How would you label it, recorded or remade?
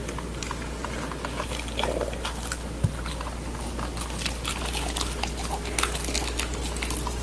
recorded